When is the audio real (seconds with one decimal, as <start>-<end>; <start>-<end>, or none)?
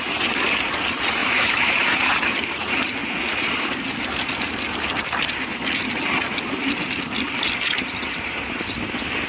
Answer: 0.0-1.2; 1.7-9.3